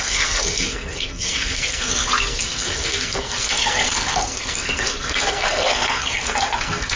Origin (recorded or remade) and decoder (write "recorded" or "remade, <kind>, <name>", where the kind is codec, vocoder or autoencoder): remade, codec, SNAC